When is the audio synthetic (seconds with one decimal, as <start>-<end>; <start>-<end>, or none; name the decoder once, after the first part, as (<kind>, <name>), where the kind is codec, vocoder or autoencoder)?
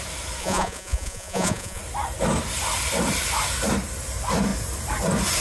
0.4-1.8 (vocoder, Vocos)